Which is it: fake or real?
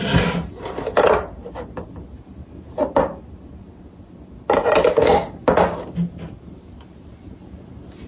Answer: real